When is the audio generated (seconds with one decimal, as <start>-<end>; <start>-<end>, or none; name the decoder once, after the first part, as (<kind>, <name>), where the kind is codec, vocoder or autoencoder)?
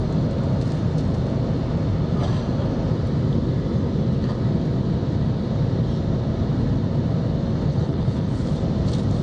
7.7-8.5 (codec, HILCodec)